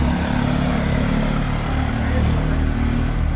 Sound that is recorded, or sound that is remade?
recorded